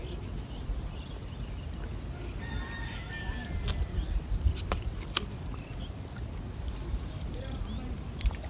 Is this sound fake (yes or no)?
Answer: no